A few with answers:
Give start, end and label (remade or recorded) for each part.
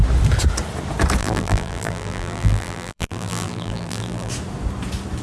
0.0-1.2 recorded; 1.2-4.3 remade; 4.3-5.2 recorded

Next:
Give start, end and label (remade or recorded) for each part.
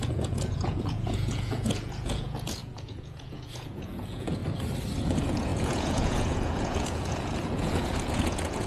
0.0-4.4 remade; 4.4-5.0 recorded; 5.0-8.7 remade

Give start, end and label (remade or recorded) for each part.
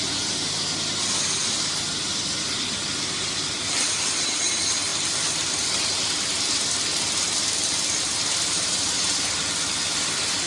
0.0-8.1 recorded; 8.1-9.4 remade; 9.4-10.5 recorded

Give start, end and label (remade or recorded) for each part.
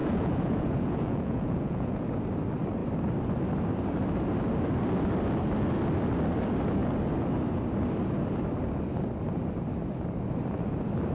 0.0-2.1 remade; 2.1-11.1 recorded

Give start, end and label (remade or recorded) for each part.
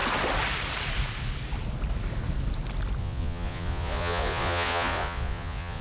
0.0-3.0 recorded; 3.0-5.8 remade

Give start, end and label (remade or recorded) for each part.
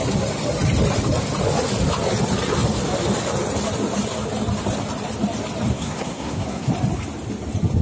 0.0-5.7 recorded; 5.7-6.7 remade; 6.7-7.8 recorded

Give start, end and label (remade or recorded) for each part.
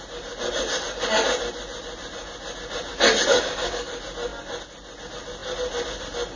0.0-3.3 recorded; 3.3-3.9 remade; 3.9-6.4 recorded